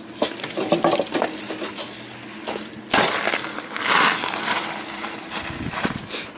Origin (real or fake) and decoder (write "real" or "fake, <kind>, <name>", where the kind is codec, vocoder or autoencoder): real